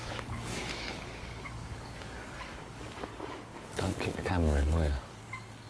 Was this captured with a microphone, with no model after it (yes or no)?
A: no